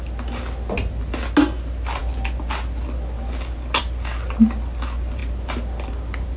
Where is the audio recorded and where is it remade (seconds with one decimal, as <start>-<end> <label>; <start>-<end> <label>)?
0.0-6.4 recorded